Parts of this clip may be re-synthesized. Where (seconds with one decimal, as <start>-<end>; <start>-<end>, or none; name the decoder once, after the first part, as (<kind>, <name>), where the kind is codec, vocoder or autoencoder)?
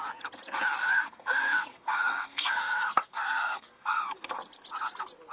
0.8-4.0 (codec, SNAC)